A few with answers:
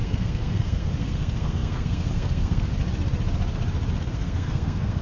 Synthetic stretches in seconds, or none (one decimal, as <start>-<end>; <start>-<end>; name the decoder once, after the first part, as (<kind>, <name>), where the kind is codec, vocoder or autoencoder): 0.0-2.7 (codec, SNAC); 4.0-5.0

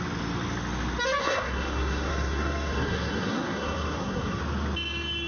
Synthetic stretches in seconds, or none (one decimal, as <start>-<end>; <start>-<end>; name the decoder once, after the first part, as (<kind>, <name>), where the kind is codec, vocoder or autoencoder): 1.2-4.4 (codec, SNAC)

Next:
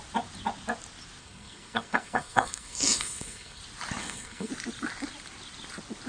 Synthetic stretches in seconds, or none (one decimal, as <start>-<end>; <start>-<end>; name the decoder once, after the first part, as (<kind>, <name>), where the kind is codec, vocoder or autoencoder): 1.2-3.6 (codec, SNAC); 4.0-4.5

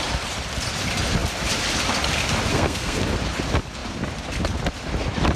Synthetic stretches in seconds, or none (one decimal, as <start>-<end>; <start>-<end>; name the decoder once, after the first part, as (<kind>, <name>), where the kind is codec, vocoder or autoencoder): 2.5-3.0 (codec, SNAC)

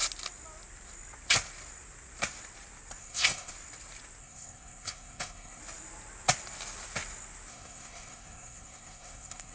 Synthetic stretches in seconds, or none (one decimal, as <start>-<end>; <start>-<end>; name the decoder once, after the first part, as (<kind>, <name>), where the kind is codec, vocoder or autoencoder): 3.0-3.5 (codec, SNAC); 4.2-5.6; 7.5-9.5